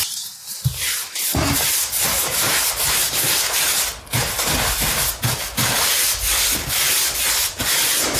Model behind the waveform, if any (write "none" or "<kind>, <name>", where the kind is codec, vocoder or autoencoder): none